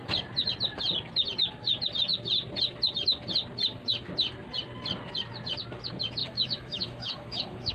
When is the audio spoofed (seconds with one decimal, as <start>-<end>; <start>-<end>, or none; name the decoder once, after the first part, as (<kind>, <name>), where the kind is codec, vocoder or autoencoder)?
6.2-7.7 (autoencoder, DAC-VAE)